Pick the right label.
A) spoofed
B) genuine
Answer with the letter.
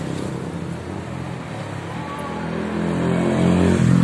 B